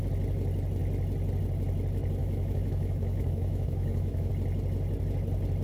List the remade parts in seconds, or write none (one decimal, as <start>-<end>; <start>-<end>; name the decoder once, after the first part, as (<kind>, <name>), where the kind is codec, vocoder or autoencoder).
2.2-4.3 (autoencoder, DAC-VAE)